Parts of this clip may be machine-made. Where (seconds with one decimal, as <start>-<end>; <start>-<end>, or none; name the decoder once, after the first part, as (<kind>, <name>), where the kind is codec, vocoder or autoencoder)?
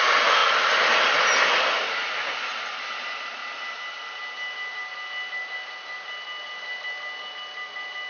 none